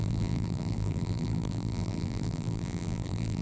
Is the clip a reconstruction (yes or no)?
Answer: yes